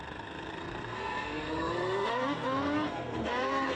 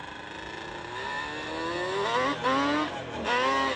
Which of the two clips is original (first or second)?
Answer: second